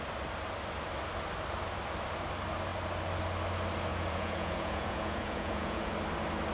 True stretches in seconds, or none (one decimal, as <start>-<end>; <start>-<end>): 0.0-3.9; 5.9-6.5